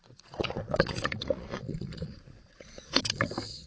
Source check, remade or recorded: remade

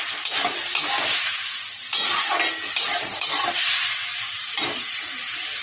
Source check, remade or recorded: recorded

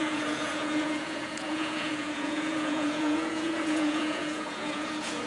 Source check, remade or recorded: remade